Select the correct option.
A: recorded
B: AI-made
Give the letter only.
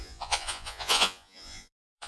B